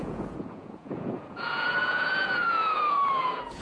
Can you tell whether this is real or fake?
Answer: fake